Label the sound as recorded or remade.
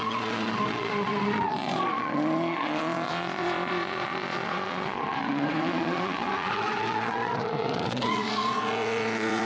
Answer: remade